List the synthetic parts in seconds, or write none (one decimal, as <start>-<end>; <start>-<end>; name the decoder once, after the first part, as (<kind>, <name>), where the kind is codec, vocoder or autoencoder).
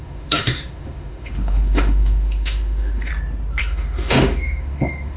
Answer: 0.0-3.1 (autoencoder, DAC-VAE); 3.6-5.2